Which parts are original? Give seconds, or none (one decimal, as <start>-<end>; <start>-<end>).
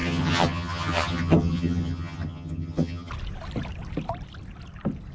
3.1-5.1